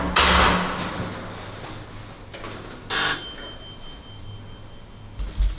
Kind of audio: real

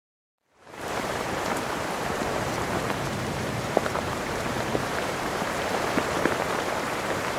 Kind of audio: fake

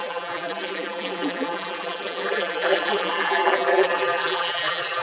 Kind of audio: fake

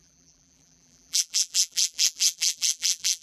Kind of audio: fake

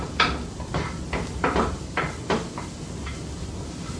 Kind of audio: real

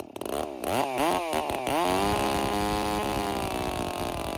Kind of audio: real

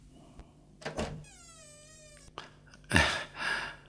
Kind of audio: fake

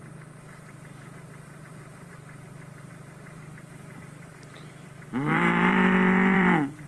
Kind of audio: fake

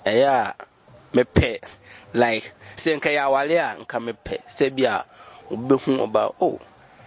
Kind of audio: real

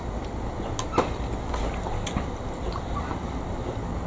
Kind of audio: real